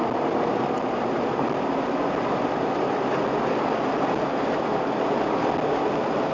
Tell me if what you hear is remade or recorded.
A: recorded